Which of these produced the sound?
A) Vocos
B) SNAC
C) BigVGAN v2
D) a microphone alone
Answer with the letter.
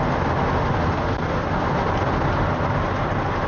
D